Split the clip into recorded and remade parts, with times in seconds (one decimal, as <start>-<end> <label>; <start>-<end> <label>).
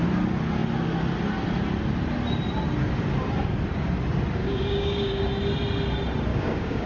0.0-4.4 recorded; 4.4-5.2 remade; 5.2-6.3 recorded; 6.3-6.9 remade